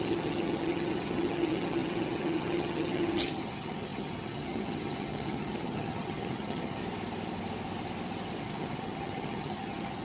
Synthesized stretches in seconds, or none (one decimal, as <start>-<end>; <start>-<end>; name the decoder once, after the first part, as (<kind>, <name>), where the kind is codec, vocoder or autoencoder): 0.0-6.8 (vocoder, HiFi-GAN); 8.4-10.0